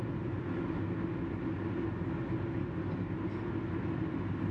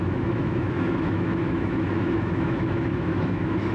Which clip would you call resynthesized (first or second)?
second